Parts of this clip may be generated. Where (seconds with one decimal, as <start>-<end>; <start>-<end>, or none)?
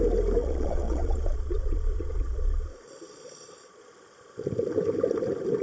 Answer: 0.4-3.8